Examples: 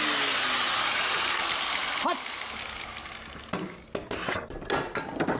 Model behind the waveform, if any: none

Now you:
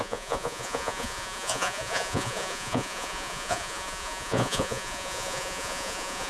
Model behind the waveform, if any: vocoder, Vocos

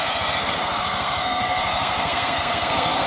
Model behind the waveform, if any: codec, SNAC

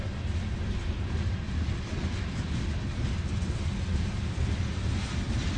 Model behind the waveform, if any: none